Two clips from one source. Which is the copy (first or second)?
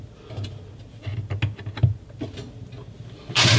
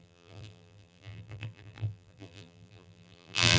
second